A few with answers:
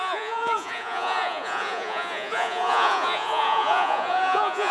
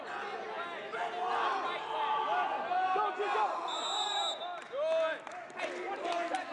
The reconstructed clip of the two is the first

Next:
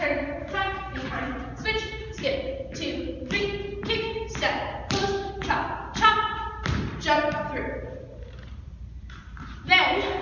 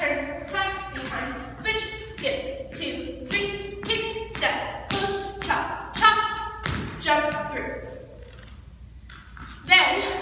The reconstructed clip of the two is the first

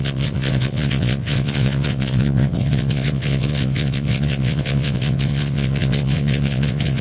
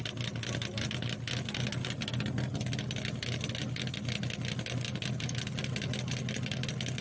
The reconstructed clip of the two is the first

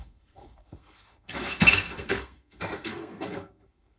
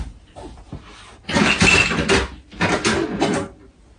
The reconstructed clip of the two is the first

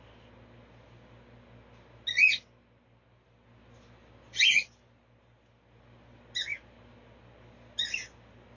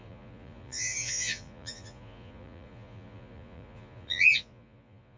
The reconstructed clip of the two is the second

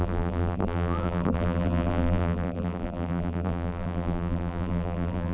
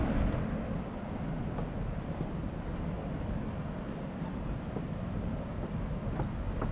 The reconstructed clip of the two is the first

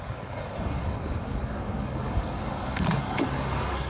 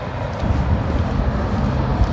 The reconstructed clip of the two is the first